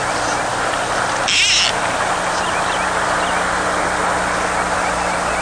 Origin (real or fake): real